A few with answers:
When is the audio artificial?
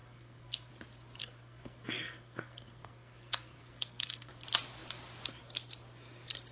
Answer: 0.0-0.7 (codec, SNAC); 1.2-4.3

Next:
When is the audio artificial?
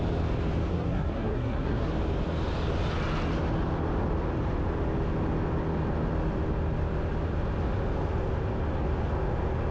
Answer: 0.7-1.9 (codec, SNAC)